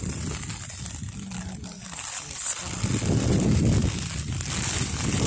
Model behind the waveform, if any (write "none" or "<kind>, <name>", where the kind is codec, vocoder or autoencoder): none